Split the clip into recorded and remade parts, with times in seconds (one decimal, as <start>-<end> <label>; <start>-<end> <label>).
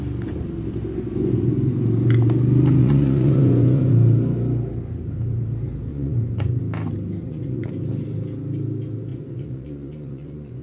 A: 0.0-2.8 recorded; 2.8-3.9 remade; 3.9-5.9 recorded; 5.9-6.6 remade; 6.6-7.2 recorded; 7.2-7.7 remade; 7.7-9.1 recorded; 9.1-10.6 remade